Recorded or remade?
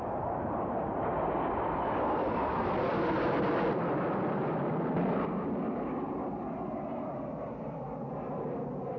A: recorded